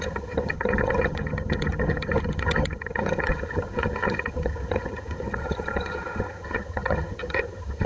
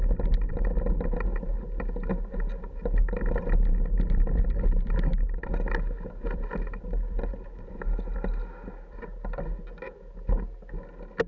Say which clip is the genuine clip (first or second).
second